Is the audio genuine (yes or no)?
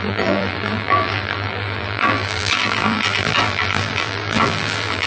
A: no